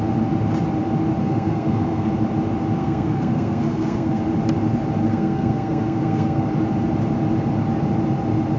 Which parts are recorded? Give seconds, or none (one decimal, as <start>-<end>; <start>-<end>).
0.0-1.2; 2.1-2.8; 4.2-5.0; 6.5-8.6